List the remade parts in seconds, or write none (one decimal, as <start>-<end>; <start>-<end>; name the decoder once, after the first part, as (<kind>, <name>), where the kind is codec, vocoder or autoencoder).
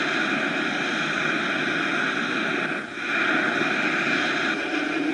none